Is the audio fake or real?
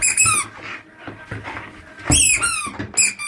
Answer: real